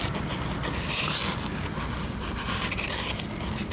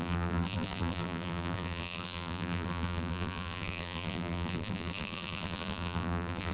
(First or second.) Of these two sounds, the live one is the first